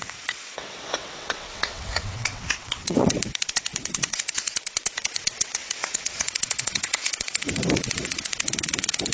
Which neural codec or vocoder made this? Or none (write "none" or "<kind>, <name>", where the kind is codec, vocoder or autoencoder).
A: vocoder, WaveNeXt